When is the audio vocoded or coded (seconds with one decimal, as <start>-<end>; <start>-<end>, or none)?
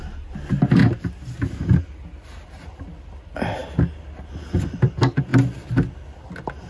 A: none